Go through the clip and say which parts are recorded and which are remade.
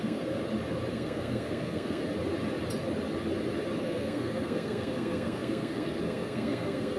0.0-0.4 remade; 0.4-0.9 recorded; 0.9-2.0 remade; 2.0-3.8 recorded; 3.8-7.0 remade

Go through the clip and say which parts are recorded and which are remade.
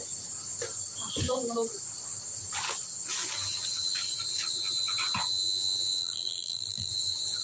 0.0-6.0 recorded; 6.0-6.9 remade; 6.9-7.4 recorded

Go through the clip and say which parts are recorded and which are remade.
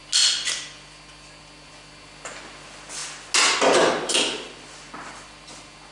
0.0-5.9 recorded